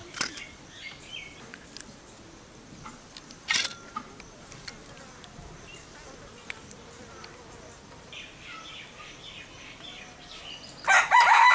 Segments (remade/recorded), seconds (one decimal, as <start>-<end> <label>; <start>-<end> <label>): 0.0-11.5 recorded